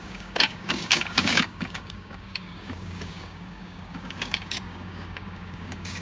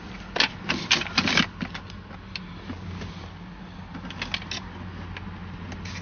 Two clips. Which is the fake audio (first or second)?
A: first